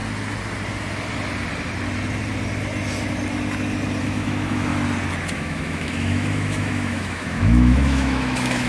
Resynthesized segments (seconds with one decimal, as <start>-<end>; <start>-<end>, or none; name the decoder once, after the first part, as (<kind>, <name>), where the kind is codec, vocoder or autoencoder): 4.0-4.7 (autoencoder, DAC-VAE); 5.3-8.7